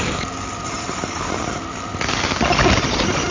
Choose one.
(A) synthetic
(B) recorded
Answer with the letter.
B